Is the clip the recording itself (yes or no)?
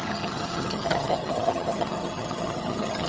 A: no